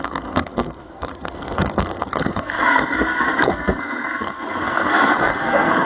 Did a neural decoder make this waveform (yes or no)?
yes